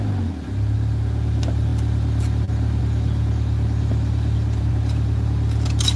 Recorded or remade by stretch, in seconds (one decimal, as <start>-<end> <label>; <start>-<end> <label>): 0.0-6.0 recorded